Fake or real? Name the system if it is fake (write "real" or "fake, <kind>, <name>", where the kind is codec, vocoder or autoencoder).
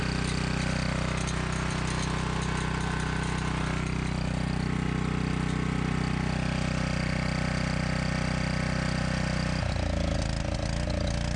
real